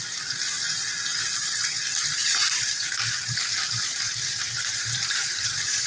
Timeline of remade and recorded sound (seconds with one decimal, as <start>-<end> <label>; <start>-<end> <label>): 0.0-2.2 recorded; 2.2-5.9 remade